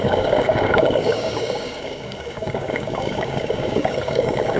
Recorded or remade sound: remade